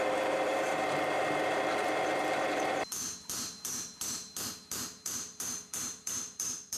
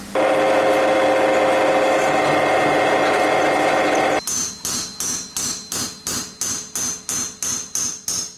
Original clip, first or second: second